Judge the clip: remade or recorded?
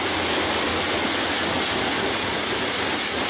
recorded